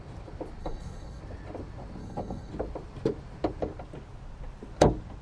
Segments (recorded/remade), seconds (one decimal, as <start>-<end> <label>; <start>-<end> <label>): 0.0-0.6 recorded; 0.6-1.2 remade; 1.2-2.0 recorded; 2.0-2.5 remade; 2.5-5.2 recorded